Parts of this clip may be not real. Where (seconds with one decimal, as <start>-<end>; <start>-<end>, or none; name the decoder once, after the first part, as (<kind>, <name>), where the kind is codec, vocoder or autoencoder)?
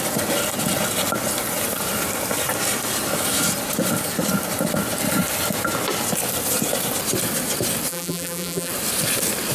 7.9-8.7 (vocoder, BigVGAN v2)